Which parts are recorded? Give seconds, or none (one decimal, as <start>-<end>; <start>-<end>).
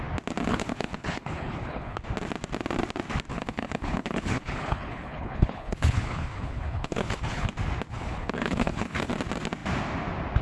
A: 0.0-0.5; 2.0-3.3; 7.5-7.9; 9.1-10.4